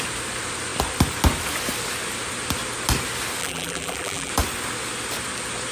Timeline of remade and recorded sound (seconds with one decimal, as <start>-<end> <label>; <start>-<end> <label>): 0.0-3.4 recorded; 3.4-4.3 remade; 4.3-5.7 recorded